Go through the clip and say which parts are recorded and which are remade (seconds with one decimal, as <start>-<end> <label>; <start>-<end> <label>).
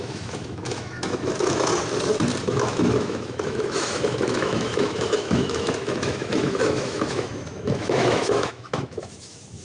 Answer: 0.0-1.7 remade; 1.7-2.4 recorded; 2.4-9.6 remade